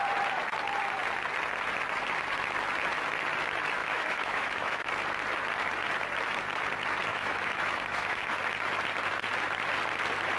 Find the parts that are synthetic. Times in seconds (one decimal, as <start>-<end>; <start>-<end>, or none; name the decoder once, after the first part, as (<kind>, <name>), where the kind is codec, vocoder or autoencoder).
3.8-4.9 (autoencoder, DAC-VAE); 7.1-8.4